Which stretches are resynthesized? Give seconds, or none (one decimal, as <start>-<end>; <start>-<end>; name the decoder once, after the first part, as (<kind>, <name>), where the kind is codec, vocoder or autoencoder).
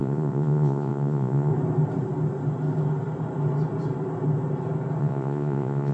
0.0-1.5 (vocoder, Vocos); 5.0-5.9